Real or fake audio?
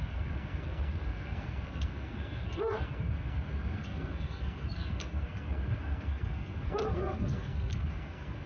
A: fake